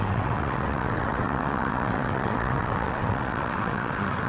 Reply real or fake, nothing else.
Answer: fake